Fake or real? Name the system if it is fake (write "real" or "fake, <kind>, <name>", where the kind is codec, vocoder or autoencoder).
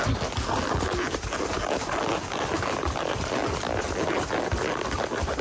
real